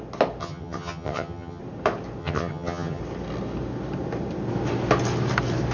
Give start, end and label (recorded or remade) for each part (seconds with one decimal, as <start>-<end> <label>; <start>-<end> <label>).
0.0-0.4 recorded; 0.4-1.6 remade; 1.6-2.2 recorded; 2.2-3.0 remade; 3.0-5.7 recorded